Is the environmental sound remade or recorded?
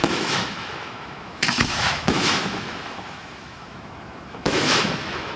remade